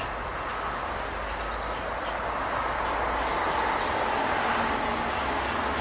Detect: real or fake real